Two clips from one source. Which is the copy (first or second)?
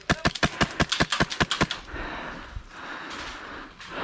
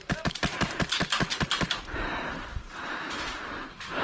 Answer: second